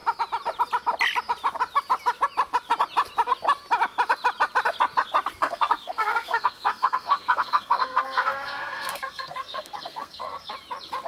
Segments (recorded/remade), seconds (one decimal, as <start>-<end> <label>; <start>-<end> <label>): 0.0-5.4 recorded; 5.4-10.5 remade; 10.5-11.1 recorded